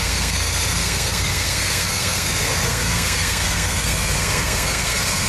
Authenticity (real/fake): fake